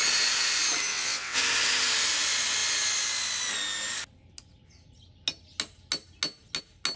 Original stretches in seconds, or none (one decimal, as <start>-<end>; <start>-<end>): 0.0-0.9; 1.4-7.0